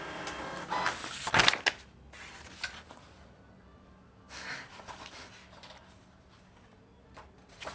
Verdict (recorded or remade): recorded